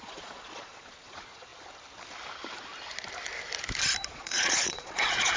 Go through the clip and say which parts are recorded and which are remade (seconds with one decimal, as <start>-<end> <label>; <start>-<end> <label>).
0.0-1.5 remade; 1.5-4.1 recorded; 4.1-5.4 remade